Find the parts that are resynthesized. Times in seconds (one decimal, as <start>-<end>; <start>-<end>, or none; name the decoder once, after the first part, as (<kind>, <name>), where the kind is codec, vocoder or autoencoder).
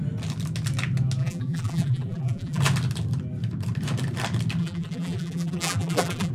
1.2-2.6 (vocoder, BigVGAN v2); 4.6-6.3